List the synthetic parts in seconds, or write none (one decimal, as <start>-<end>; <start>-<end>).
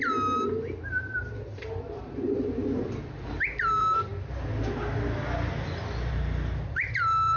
0.0-4.1; 6.1-7.4